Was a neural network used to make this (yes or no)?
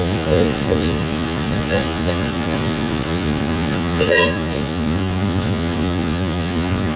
yes